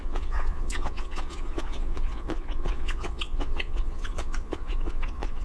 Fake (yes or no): yes